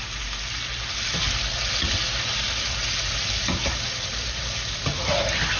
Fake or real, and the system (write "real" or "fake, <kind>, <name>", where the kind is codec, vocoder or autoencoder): real